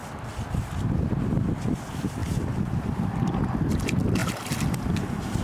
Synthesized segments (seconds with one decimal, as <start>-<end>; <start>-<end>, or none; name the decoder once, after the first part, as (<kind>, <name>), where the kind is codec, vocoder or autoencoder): 2.2-3.7 (vocoder, BigVGAN v2); 4.2-5.4